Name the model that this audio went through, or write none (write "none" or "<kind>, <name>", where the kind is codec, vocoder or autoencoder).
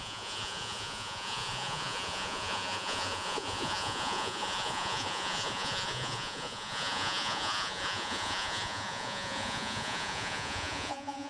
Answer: vocoder, Vocos